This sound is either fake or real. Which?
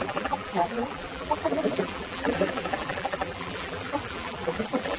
fake